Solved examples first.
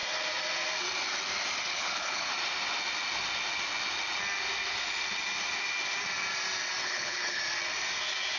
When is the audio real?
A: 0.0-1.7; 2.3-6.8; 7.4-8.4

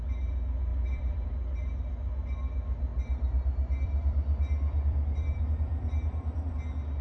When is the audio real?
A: 0.0-0.7; 1.3-2.9; 6.5-7.0

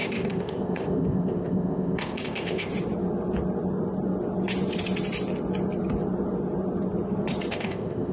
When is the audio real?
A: 2.7-7.5

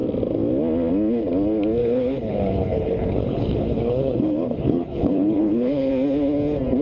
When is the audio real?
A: 0.0-1.8; 5.9-6.8

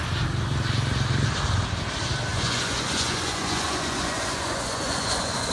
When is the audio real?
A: 0.0-2.3